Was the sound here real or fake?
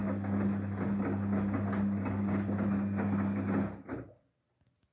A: real